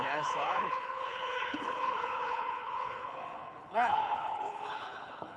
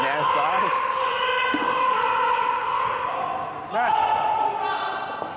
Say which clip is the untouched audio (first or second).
second